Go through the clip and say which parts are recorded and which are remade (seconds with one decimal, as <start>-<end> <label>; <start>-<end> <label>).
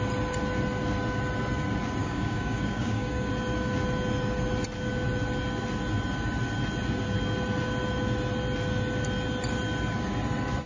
0.0-2.0 recorded; 2.0-3.3 remade; 3.3-10.7 recorded